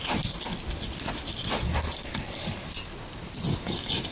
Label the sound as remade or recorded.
recorded